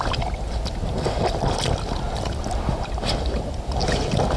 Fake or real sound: real